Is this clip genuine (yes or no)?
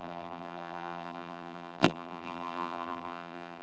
no